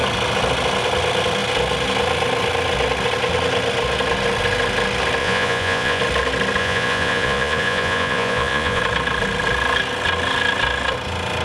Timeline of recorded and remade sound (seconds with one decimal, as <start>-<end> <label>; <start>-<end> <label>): 0.0-5.2 recorded; 5.2-6.0 remade; 6.0-6.6 recorded; 6.6-8.8 remade; 8.8-11.4 recorded